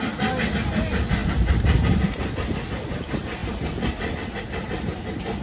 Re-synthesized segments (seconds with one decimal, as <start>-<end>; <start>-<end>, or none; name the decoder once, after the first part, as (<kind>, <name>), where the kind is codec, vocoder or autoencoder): 1.2-2.3 (vocoder, BigVGAN v2); 3.4-4.4